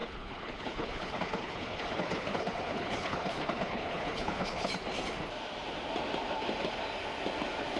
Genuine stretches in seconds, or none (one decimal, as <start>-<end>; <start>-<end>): 4.7-7.8